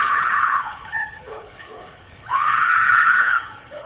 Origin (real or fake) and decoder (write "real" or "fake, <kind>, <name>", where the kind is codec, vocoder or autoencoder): fake, codec, HILCodec